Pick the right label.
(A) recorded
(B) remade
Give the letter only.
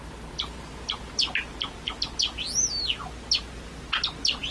A